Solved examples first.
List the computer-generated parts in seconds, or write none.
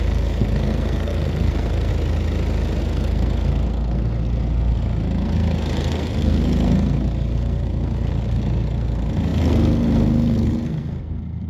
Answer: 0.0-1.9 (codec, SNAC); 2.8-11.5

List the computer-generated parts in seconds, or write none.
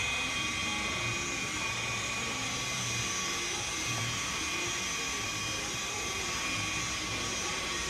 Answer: none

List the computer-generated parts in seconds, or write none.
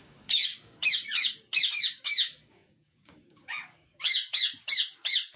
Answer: 0.0-5.4 (codec, DAC)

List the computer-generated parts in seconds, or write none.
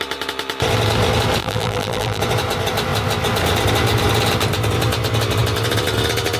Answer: 1.4-2.2 (vocoder, BigVGAN v2)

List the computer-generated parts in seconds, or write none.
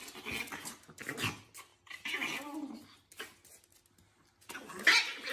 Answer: none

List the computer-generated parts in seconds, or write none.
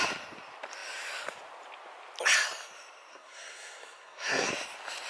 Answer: 3.1-4.5 (codec, SNAC)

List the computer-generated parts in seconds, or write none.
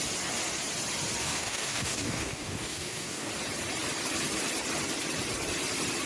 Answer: 1.2-3.3 (codec, DAC)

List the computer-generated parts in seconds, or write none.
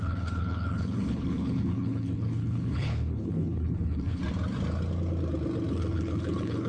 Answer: 0.0-4.2 (codec, HILCodec); 5.7-6.7